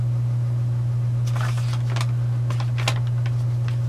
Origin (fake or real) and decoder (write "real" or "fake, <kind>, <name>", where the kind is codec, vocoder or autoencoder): real